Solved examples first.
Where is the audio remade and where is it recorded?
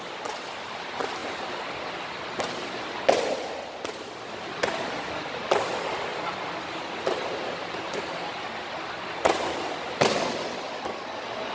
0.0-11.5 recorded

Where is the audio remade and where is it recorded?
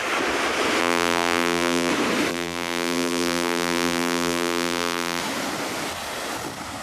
0.0-0.8 recorded; 0.8-1.9 remade; 1.9-2.3 recorded; 2.3-5.2 remade; 5.2-6.8 recorded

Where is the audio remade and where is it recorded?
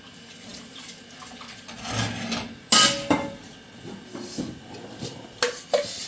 0.0-6.1 recorded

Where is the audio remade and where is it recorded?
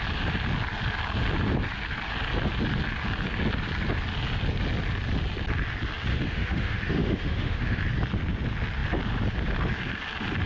0.0-6.1 recorded; 6.1-7.8 remade; 7.8-10.5 recorded